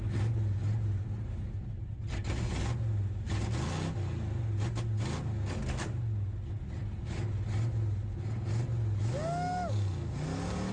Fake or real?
real